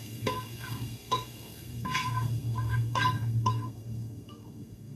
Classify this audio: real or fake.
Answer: fake